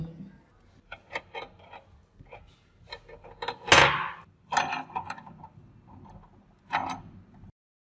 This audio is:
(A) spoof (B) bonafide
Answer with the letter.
B